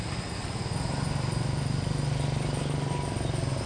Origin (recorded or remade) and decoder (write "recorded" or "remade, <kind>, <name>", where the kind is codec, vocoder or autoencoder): recorded